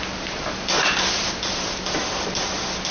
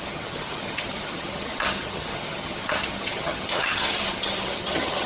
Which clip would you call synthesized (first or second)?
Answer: second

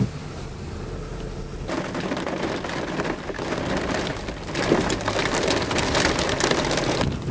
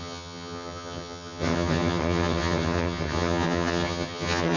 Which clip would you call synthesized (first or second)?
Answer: second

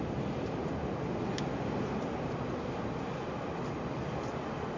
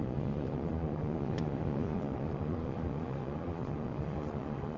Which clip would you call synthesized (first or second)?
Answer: second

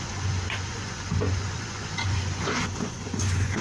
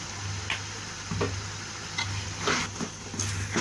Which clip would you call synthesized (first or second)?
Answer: first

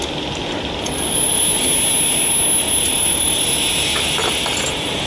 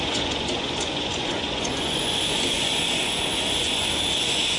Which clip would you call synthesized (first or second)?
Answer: second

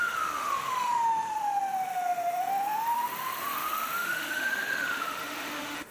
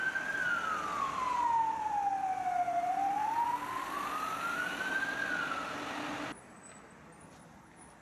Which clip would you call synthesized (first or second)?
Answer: first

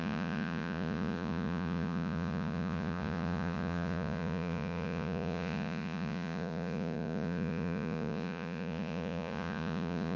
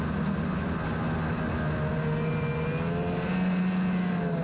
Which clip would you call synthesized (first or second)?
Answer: first